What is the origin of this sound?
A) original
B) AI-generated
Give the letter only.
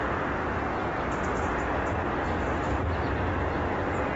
A